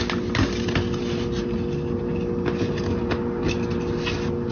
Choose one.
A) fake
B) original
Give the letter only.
B